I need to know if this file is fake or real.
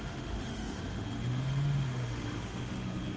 fake